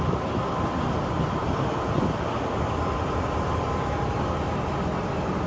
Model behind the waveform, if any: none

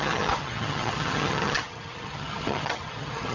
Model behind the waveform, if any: vocoder, HiFi-GAN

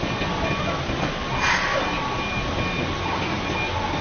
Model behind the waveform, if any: none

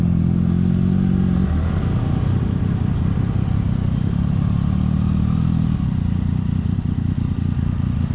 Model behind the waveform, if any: none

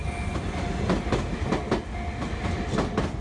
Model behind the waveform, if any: none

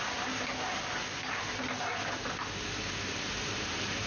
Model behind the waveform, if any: none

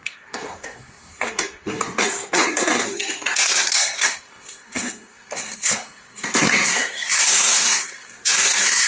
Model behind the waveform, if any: codec, SNAC